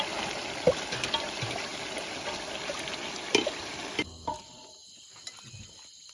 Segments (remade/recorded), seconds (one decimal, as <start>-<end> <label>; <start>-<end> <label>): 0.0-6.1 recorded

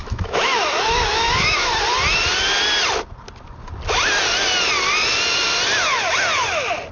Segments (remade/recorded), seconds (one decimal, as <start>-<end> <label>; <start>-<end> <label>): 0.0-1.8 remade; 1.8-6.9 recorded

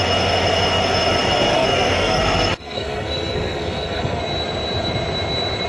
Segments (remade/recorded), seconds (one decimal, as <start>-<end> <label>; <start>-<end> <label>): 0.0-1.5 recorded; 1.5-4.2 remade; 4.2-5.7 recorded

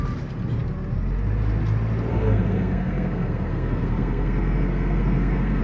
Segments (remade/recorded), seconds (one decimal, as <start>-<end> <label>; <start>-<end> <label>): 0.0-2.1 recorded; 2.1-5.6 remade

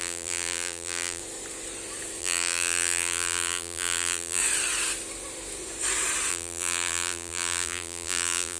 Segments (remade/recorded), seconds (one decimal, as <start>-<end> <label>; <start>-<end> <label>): 0.0-1.2 remade; 1.2-2.2 recorded; 2.2-4.4 remade; 4.4-6.3 recorded; 6.3-8.6 remade

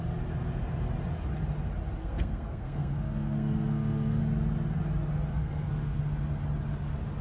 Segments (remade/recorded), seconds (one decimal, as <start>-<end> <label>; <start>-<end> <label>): 0.0-2.0 recorded; 2.0-4.2 remade; 4.2-5.4 recorded; 5.4-6.0 remade; 6.0-7.2 recorded